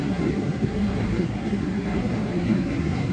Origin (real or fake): fake